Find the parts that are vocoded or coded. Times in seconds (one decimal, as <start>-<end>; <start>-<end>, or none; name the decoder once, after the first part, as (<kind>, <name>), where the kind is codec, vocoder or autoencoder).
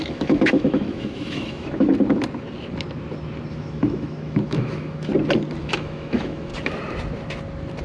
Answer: 0.0-1.9 (autoencoder, DAC-VAE); 3.5-5.1; 5.6-6.5